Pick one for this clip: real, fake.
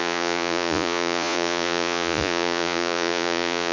fake